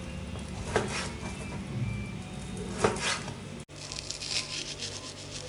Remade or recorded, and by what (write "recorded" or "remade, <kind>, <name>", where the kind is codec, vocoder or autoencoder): recorded